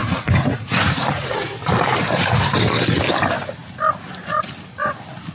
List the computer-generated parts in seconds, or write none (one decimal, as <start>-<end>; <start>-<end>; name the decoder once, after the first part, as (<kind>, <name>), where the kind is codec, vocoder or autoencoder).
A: 0.0-2.3 (vocoder, BigVGAN v2); 3.6-4.4